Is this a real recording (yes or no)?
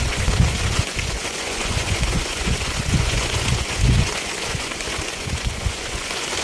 no